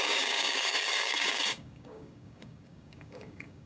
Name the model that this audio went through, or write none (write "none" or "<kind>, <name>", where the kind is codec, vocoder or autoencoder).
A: codec, DAC